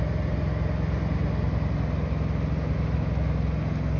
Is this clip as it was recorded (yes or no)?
yes